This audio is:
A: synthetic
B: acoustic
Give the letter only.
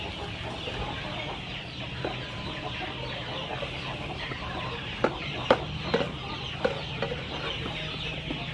B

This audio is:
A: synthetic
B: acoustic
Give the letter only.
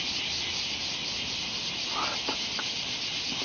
B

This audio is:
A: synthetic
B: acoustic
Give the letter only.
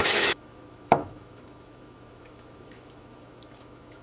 A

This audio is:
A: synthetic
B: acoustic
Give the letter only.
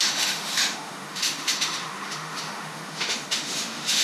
A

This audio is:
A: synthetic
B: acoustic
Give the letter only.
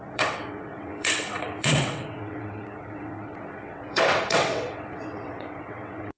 A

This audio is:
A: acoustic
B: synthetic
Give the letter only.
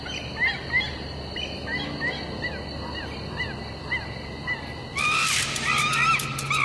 A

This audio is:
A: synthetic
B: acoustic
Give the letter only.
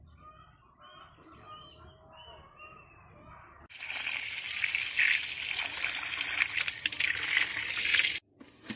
B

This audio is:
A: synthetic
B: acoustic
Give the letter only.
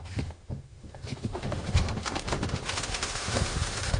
A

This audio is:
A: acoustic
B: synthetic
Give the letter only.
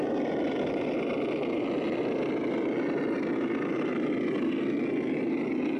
A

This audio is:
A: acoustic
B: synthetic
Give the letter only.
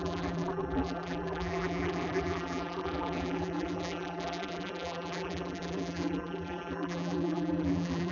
B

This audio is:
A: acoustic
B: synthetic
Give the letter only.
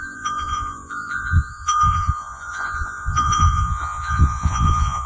B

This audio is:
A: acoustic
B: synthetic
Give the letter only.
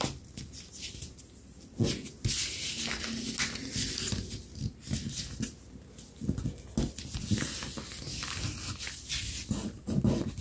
A